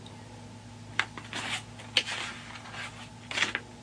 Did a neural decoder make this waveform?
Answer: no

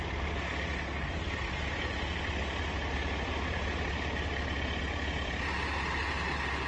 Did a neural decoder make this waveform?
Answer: no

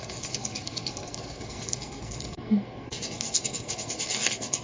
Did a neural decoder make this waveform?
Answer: yes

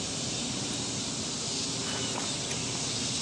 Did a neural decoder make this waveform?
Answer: no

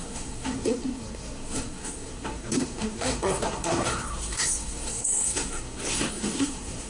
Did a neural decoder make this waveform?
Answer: yes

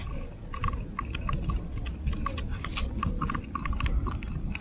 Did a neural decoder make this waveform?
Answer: no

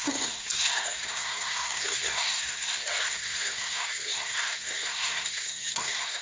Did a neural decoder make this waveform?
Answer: yes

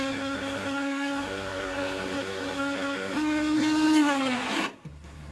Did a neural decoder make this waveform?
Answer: yes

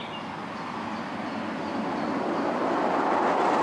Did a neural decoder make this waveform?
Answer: no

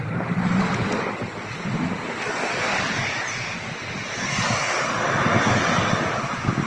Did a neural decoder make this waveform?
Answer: no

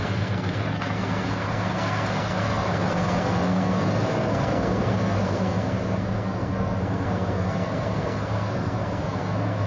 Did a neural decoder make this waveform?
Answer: yes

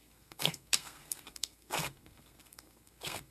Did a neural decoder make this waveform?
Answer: yes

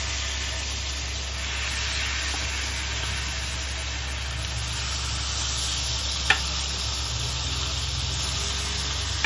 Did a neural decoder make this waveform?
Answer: no